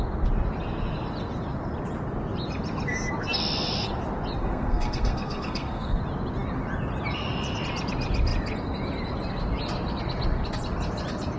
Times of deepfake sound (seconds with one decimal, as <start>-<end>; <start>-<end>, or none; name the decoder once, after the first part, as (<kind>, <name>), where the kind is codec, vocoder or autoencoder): 4.4-6.0 (codec, SNAC)